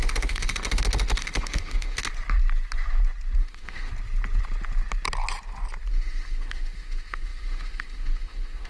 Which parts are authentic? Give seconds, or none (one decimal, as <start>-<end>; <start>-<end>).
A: 2.1-3.4; 3.9-5.9